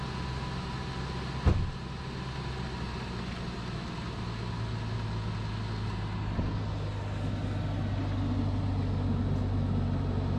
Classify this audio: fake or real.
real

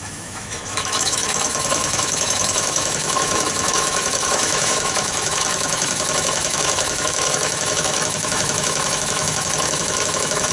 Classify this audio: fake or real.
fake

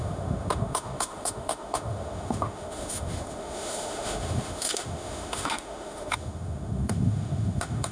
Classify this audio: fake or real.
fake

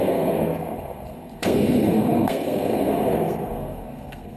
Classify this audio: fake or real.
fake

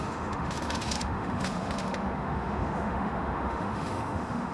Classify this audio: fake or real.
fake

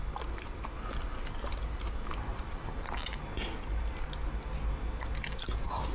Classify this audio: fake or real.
real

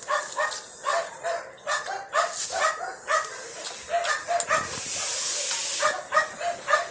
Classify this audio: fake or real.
real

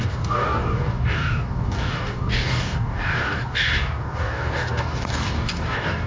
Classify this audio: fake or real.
fake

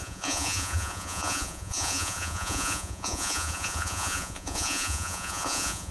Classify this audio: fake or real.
fake